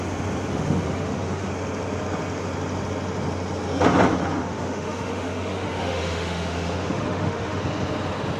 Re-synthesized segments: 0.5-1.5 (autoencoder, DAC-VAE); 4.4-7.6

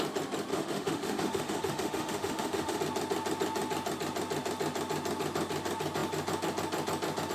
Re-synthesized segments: 0.5-2.8 (autoencoder, DAC-VAE)

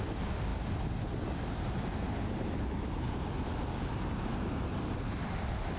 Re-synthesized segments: none

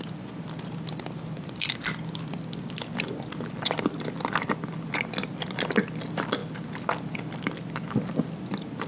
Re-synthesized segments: none

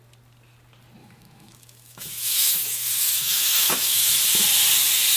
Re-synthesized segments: 1.0-4.1 (autoencoder, DAC-VAE)

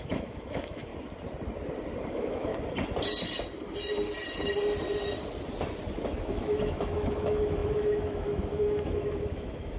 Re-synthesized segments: 0.0-0.9 (autoencoder, DAC-VAE); 2.1-2.5; 6.2-9.8

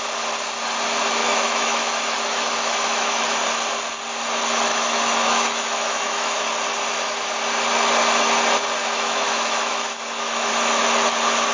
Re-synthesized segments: 1.2-3.2 (autoencoder, DAC-VAE); 4.7-6.4; 8.8-10.5

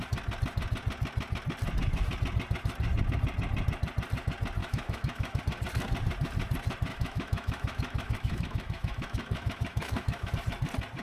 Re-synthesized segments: 4.6-5.4 (autoencoder, DAC-VAE); 6.9-10.3